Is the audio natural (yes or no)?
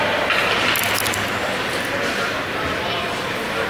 yes